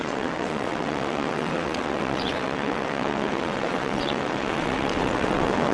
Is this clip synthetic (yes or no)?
yes